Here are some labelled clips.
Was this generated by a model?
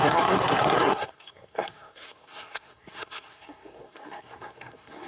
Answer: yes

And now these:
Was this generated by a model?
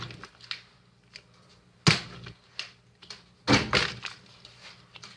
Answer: no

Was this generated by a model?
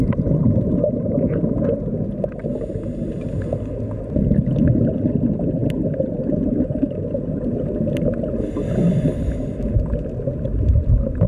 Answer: no